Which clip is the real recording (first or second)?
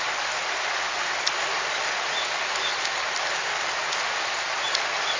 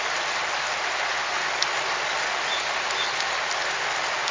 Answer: second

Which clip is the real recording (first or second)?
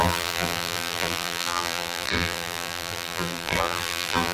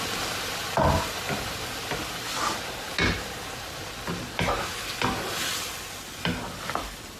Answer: second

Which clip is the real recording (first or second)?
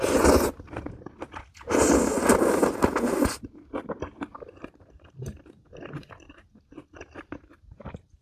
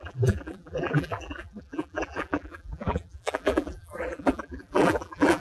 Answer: first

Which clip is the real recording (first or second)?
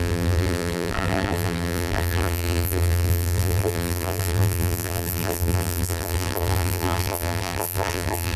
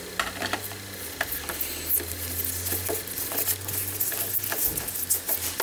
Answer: second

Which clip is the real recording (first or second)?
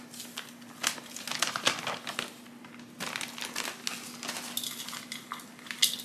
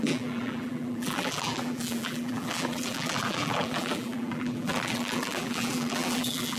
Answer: first